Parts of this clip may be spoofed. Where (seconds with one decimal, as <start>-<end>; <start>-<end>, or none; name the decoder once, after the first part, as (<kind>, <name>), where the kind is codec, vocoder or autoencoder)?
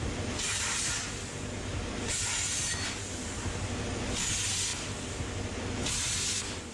none